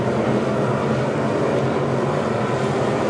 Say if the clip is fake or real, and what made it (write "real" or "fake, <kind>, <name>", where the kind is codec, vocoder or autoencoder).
real